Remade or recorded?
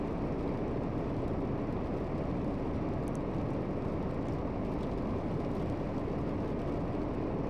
recorded